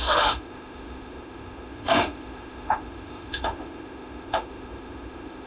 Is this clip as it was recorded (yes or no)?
no